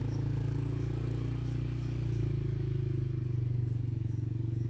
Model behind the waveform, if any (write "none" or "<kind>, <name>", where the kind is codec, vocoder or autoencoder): codec, DAC